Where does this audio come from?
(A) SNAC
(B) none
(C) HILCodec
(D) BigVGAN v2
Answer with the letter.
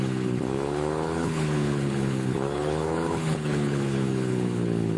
C